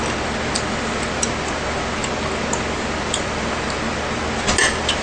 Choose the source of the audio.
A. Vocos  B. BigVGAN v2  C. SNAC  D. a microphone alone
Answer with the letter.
D